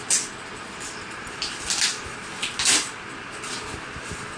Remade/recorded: recorded